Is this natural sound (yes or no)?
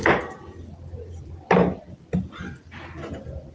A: yes